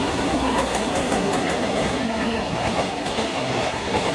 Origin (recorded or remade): remade